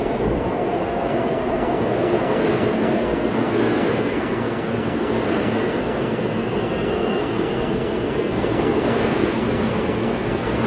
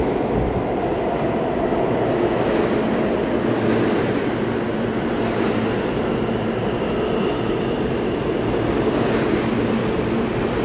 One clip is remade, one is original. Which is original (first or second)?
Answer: second